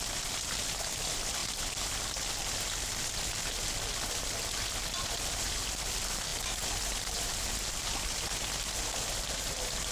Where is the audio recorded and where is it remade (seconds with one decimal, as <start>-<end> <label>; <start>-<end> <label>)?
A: 0.0-9.9 recorded